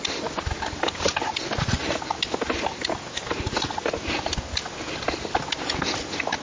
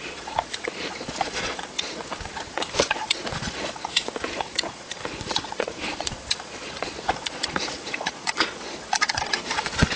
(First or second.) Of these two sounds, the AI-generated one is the second